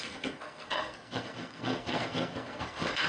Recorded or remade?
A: remade